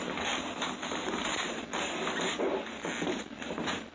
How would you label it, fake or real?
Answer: real